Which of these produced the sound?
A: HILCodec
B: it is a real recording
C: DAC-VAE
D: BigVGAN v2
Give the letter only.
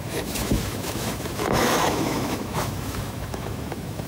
C